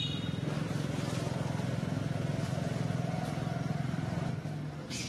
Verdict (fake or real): real